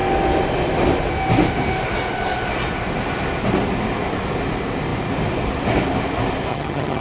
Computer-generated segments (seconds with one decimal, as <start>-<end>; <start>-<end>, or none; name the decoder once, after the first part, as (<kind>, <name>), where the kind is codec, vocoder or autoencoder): 6.5-7.0 (vocoder, HiFi-GAN)